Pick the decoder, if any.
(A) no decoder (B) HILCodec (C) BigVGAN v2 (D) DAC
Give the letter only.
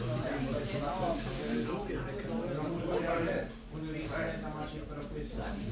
A